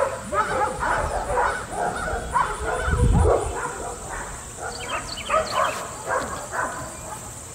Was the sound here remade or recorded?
recorded